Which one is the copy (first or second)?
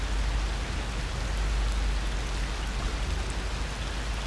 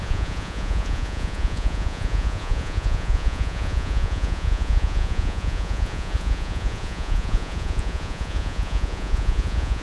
second